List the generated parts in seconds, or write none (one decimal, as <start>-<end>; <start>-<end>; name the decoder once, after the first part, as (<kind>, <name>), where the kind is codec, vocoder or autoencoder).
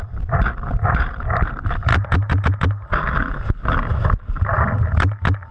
0.0-1.9 (vocoder, BigVGAN v2)